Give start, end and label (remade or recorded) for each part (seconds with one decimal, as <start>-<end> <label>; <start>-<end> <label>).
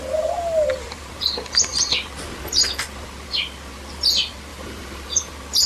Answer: 0.0-4.5 recorded; 4.5-5.3 remade; 5.3-5.7 recorded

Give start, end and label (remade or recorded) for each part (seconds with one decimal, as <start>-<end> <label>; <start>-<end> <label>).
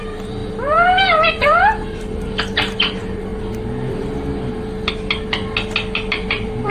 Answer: 0.0-3.3 remade; 3.3-6.1 recorded; 6.1-6.7 remade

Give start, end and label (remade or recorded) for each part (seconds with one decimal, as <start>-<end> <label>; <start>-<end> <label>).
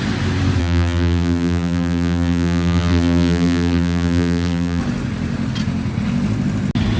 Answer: 0.0-0.6 recorded; 0.6-4.8 remade; 4.8-7.0 recorded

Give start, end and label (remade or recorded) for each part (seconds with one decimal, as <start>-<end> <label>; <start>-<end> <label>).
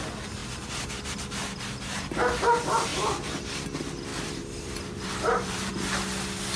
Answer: 0.0-2.9 recorded; 2.9-3.5 remade; 3.5-4.1 recorded; 4.1-5.7 remade; 5.7-6.6 recorded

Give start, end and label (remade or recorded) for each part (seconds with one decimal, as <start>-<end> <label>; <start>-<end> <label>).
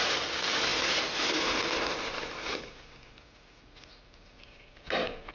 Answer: 0.0-0.7 remade; 0.7-3.9 recorded; 3.9-5.3 remade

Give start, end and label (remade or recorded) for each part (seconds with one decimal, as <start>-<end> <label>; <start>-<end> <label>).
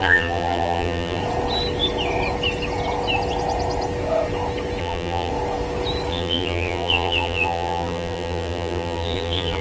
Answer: 0.0-1.2 remade; 1.2-4.8 recorded; 4.8-5.3 remade; 5.3-6.1 recorded; 6.1-9.6 remade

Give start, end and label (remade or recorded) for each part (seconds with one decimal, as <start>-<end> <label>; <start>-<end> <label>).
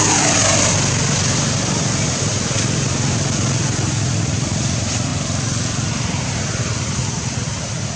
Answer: 0.0-0.4 remade; 0.4-4.4 recorded; 4.4-5.1 remade; 5.1-6.6 recorded; 6.6-8.0 remade